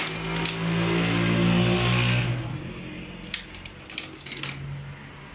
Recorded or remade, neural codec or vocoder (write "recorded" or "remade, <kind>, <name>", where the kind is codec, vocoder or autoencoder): recorded